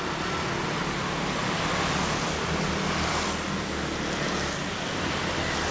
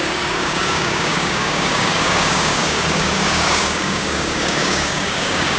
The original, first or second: first